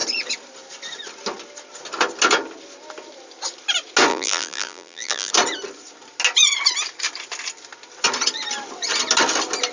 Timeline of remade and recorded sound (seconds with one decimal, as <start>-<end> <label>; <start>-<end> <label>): 0.0-4.1 recorded; 4.1-5.3 remade; 5.3-9.7 recorded